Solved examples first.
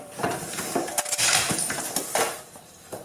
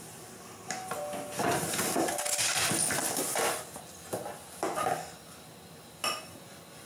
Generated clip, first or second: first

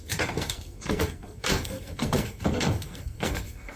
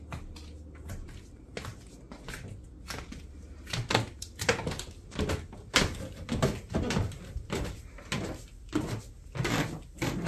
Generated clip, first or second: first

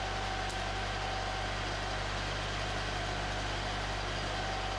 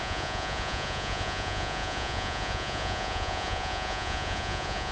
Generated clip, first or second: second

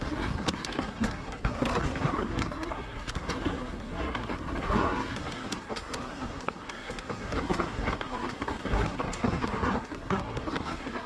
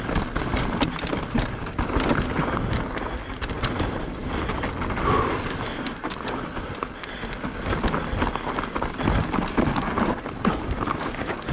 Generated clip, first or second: first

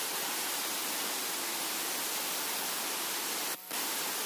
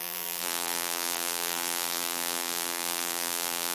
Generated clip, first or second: second